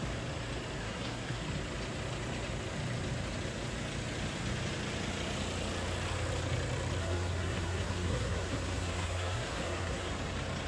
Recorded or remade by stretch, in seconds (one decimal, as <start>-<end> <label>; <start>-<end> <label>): 0.0-0.8 recorded; 0.8-1.4 remade; 1.4-7.0 recorded; 7.0-10.1 remade; 10.1-10.7 recorded

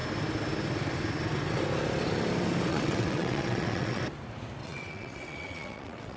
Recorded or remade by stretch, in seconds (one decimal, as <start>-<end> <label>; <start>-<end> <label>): 0.0-2.7 recorded; 2.7-4.0 remade; 4.0-4.6 recorded; 4.6-6.2 remade

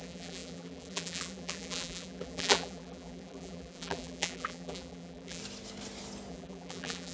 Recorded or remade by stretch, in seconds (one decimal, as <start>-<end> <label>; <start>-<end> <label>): 0.0-5.4 remade; 5.4-6.3 recorded; 6.3-7.1 remade

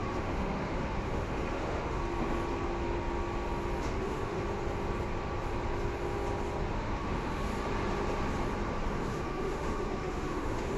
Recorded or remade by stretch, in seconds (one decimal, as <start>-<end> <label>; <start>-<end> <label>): 0.0-2.0 remade; 2.0-3.8 recorded; 3.8-4.4 remade; 4.4-6.7 recorded; 6.7-7.5 remade; 7.5-9.0 recorded; 9.0-10.8 remade

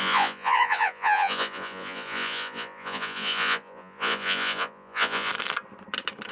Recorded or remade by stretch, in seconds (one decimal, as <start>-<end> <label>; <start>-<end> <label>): 0.0-5.3 remade; 5.3-6.3 recorded

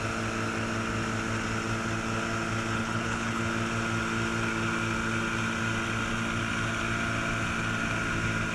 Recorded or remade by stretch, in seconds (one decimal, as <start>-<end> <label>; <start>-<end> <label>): 0.0-2.8 recorded; 2.8-3.4 remade; 3.4-8.5 recorded

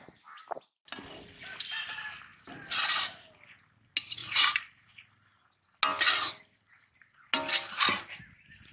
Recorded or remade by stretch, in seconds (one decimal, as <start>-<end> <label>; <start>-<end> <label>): 0.0-2.3 recorded; 2.3-3.4 remade; 3.4-4.2 recorded; 4.2-4.9 remade; 4.9-8.7 recorded